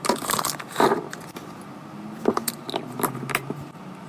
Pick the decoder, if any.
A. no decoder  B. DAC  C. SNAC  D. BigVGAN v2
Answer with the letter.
A